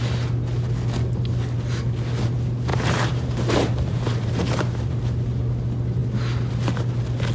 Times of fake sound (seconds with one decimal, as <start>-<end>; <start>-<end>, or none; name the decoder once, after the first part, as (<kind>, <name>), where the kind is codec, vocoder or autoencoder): 2.7-5.0 (vocoder, BigVGAN v2)